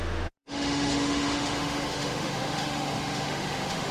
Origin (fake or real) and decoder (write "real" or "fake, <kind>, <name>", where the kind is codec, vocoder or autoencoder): fake, autoencoder, DAC-VAE